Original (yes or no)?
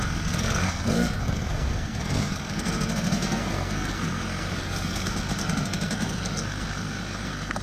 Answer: no